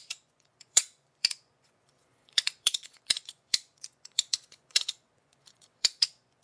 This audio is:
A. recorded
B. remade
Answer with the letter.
B